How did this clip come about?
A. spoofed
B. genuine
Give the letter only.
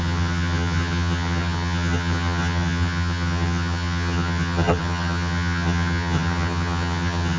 A